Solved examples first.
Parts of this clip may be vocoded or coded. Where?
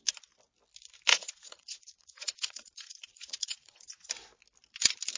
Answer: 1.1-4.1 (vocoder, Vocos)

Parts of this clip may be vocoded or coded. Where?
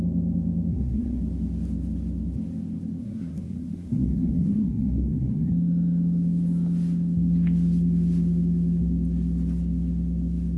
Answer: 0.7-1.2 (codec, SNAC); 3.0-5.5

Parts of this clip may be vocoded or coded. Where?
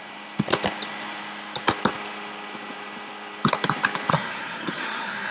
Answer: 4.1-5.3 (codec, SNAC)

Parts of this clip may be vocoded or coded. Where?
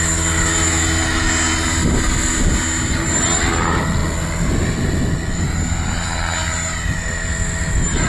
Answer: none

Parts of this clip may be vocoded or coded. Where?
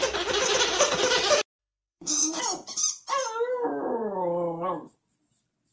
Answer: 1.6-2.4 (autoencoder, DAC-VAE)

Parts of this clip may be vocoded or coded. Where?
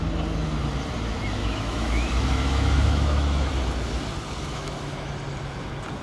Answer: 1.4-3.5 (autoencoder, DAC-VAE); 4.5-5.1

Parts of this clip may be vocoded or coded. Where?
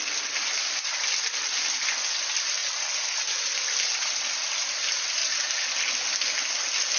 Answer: none